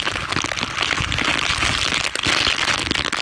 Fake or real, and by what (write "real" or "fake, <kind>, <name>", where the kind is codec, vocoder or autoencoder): real